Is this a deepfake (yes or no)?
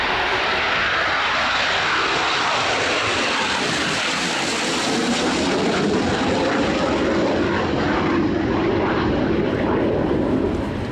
no